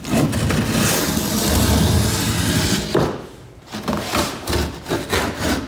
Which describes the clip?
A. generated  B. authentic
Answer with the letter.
B